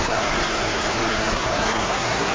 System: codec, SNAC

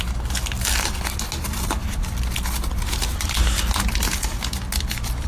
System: none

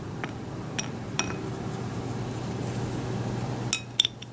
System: none